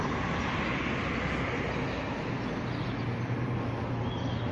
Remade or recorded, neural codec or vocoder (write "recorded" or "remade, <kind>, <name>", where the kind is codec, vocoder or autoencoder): recorded